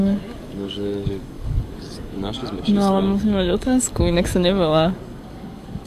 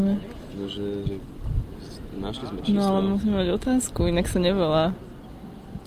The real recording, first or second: second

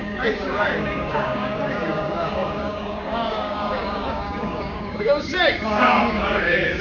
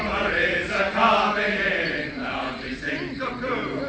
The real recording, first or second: second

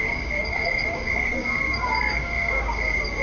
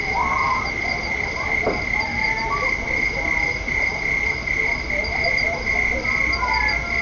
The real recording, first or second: second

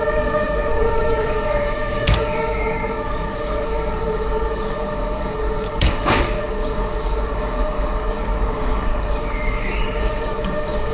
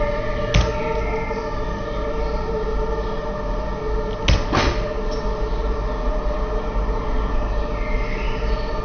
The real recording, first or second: second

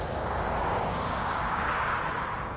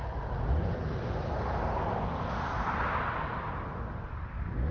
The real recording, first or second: second